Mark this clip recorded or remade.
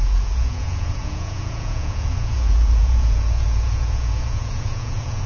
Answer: remade